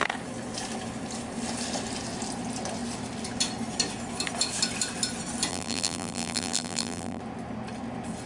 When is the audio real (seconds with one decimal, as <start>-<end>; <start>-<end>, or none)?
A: 0.0-5.5; 7.2-8.3